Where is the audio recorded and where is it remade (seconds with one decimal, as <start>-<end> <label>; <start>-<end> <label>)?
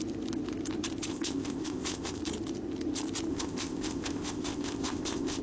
0.0-1.1 recorded; 1.1-2.2 remade; 2.2-3.3 recorded; 3.3-5.4 remade